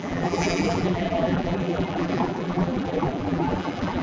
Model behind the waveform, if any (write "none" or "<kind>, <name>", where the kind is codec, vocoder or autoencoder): vocoder, BigVGAN v2